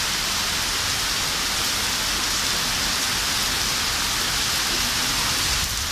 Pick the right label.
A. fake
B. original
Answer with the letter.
B